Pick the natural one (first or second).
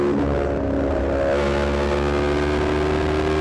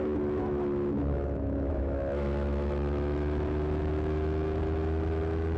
first